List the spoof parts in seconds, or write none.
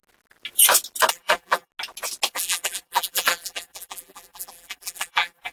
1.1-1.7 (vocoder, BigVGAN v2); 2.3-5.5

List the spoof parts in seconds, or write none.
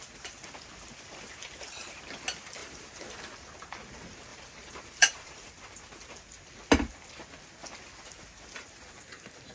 2.6-3.2 (vocoder, BigVGAN v2); 4.3-5.5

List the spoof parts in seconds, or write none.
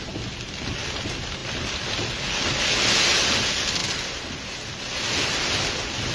1.4-2.1 (vocoder, BigVGAN v2)